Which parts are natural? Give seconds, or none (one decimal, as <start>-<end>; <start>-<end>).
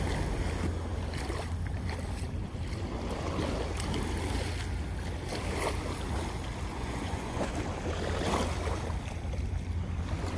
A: 0.0-6.7; 7.5-10.4